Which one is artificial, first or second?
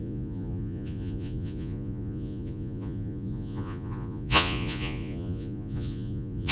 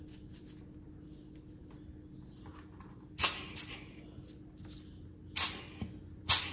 first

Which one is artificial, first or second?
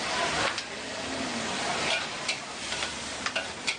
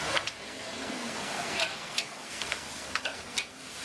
second